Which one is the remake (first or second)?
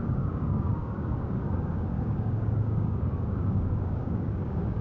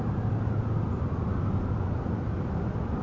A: first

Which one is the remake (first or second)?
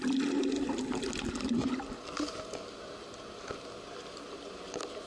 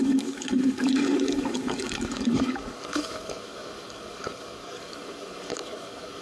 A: second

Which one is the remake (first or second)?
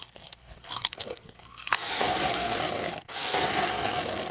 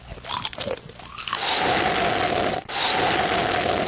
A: first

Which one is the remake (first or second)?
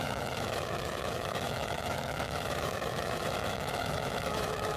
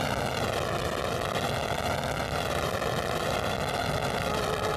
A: first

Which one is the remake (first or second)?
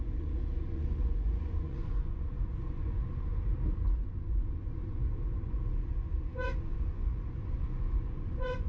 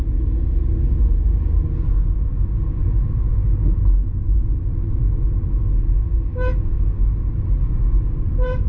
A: first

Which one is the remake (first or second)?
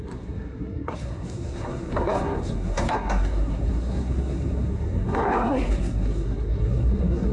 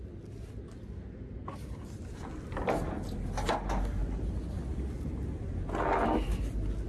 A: first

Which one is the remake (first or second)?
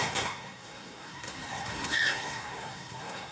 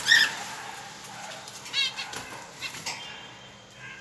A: first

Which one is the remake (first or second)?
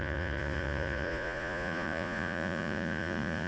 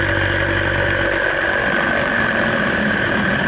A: first